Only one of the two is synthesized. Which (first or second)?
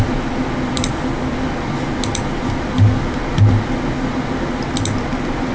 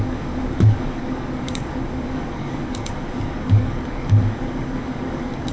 second